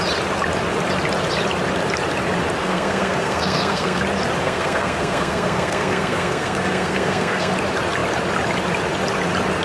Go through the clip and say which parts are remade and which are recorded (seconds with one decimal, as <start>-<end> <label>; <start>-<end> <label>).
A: 0.0-2.6 recorded; 2.6-4.0 remade; 4.0-4.4 recorded; 4.4-7.5 remade; 7.5-9.6 recorded